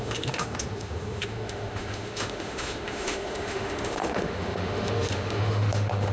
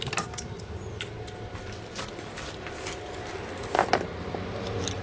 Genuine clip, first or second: second